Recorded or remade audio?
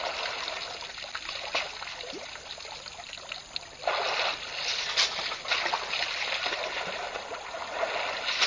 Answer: recorded